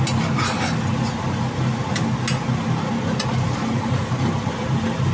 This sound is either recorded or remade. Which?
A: recorded